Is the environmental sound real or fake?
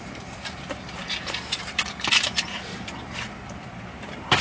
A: fake